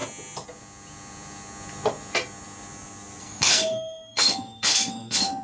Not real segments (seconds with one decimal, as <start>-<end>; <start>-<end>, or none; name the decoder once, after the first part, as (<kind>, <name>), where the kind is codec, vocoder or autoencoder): 3.2-5.4 (codec, SNAC)